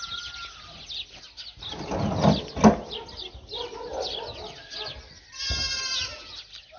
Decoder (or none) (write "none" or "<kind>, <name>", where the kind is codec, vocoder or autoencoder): none